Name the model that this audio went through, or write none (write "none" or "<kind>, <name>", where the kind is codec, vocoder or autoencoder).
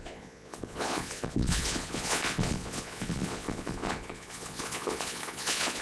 vocoder, Vocos